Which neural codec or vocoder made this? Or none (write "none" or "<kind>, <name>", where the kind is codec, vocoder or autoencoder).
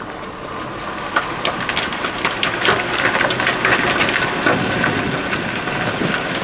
none